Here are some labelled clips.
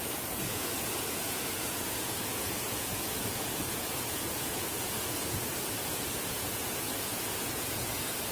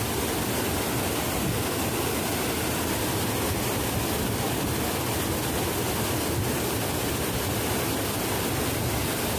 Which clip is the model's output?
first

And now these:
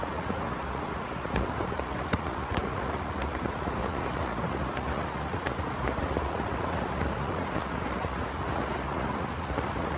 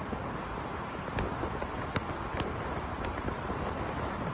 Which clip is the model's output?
first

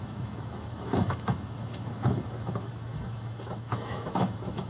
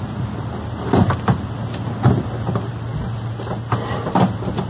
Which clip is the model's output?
first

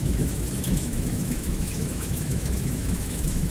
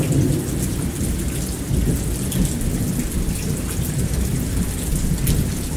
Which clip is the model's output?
first